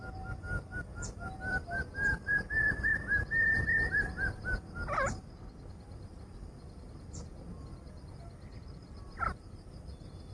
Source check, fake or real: fake